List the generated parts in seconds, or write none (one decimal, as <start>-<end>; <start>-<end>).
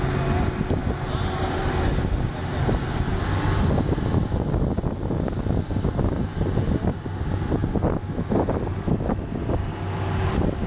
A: none